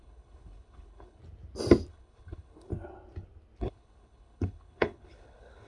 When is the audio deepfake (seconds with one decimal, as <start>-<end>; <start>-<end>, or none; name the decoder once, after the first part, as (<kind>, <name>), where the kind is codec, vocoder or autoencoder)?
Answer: 0.0-1.2 (codec, HILCodec); 1.9-2.7; 3.6-5.7